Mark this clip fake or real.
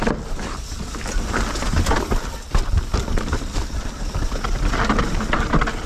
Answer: real